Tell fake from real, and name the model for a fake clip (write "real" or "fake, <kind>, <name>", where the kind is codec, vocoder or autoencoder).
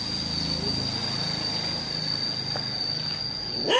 real